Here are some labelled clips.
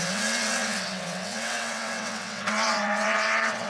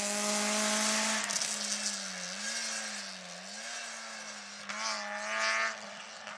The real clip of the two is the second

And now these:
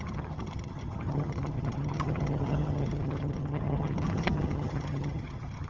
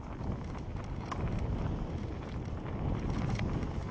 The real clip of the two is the second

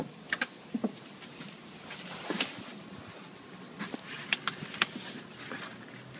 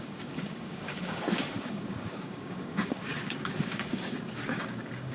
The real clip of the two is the first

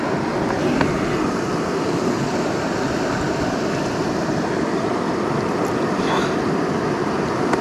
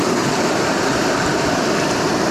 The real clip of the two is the first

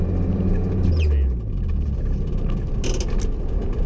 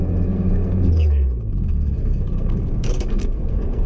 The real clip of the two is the first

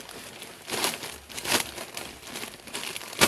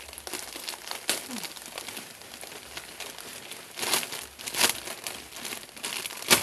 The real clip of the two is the second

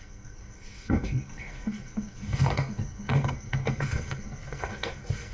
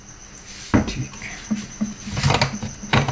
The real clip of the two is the second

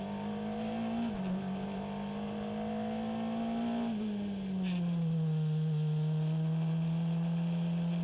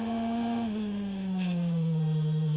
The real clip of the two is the first